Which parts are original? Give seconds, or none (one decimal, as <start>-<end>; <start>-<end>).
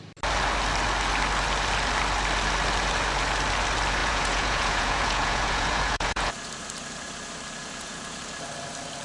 0.0-4.0; 6.3-7.6; 8.2-9.0